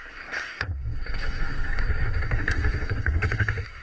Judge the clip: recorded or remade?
remade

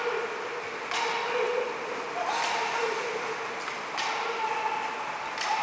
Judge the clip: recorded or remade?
recorded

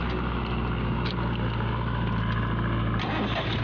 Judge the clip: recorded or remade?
recorded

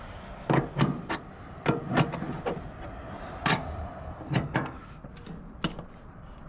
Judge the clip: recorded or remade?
recorded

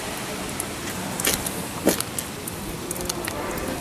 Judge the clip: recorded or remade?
recorded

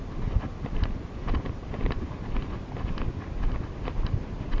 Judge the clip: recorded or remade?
recorded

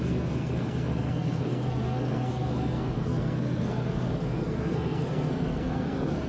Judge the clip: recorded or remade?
remade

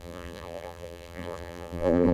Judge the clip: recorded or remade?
remade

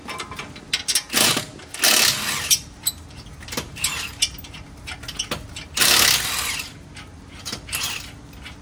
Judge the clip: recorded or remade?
recorded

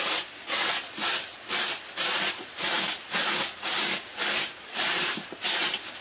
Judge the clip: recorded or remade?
recorded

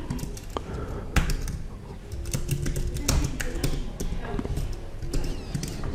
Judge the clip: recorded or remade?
recorded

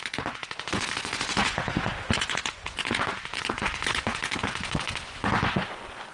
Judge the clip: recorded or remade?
remade